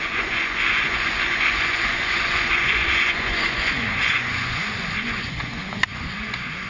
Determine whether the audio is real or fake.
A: fake